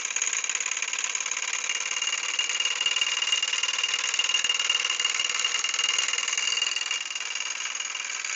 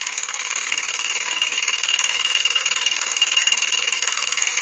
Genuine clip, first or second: first